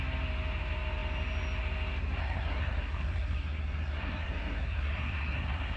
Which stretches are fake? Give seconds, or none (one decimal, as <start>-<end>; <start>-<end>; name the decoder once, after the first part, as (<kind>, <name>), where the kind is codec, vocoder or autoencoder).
2.2-5.8 (codec, SNAC)